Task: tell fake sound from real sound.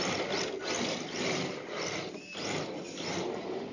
real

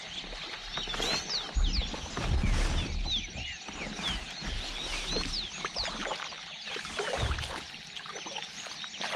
real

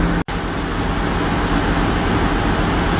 real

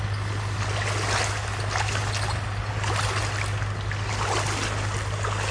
real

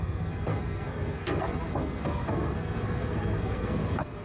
fake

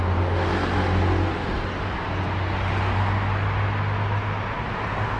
real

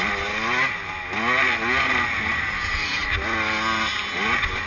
real